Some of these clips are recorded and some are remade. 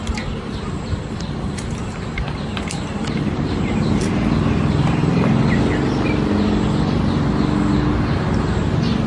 recorded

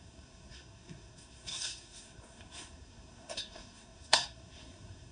remade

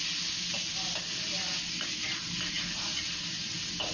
recorded